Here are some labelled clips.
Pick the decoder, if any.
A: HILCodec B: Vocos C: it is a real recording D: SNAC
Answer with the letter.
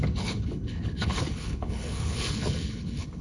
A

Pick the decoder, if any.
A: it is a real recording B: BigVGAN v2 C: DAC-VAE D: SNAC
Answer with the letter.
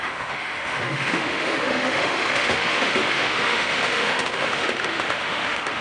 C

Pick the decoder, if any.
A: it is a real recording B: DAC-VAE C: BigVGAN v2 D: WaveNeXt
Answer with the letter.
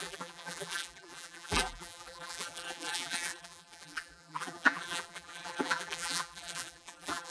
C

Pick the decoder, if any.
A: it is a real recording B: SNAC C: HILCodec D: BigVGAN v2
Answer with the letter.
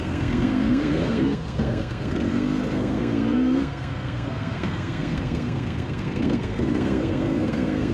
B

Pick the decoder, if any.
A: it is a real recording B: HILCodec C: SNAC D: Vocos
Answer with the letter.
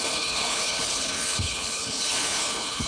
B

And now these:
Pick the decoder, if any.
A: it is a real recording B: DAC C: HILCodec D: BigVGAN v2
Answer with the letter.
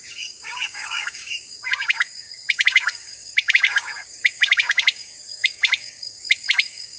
B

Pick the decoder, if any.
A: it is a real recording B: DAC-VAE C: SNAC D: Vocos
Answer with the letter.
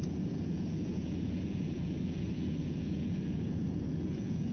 D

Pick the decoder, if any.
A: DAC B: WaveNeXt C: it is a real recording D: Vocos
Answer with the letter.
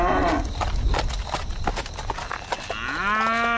C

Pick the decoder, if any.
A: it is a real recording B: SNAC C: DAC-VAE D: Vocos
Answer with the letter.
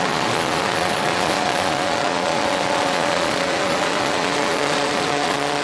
D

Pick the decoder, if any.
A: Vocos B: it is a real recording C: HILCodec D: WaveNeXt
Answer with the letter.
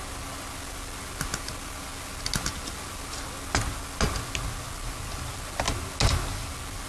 B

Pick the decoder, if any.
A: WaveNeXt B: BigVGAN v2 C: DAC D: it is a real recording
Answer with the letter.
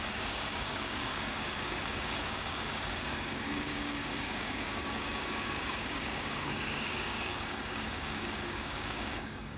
C